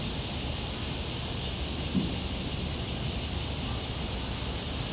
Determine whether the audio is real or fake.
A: real